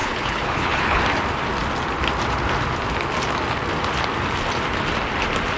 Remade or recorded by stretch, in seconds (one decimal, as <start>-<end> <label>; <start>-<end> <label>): 0.0-1.0 remade; 1.0-5.6 recorded